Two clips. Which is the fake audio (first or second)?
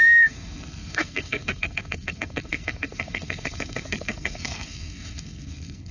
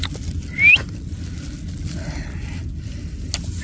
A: first